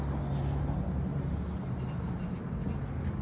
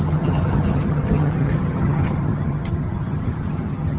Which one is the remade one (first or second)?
second